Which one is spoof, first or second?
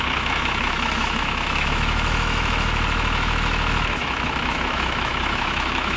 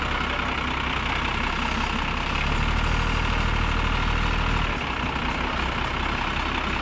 first